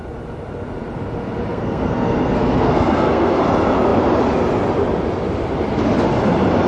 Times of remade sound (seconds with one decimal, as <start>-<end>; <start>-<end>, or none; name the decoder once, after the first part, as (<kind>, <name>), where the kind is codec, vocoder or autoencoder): 1.5-3.4 (codec, SNAC)